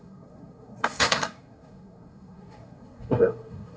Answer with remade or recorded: remade